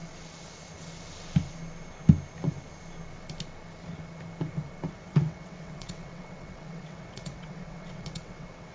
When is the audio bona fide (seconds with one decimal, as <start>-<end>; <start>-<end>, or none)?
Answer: 0.0-4.9